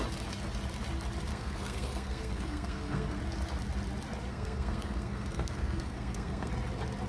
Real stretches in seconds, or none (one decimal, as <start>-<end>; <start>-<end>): 0.0-1.3; 3.2-4.3; 6.5-7.1